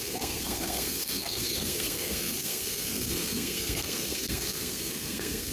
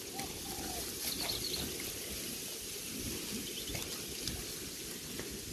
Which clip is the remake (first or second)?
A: first